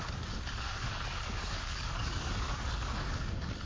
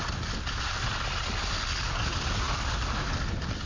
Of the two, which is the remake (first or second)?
first